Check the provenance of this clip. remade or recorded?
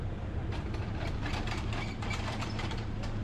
remade